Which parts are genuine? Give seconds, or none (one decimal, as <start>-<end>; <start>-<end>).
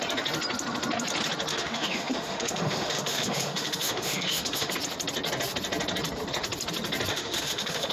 0.0-1.5; 4.7-7.1